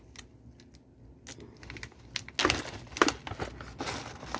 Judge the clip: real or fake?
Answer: real